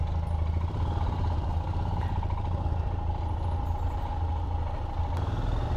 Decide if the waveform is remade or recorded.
recorded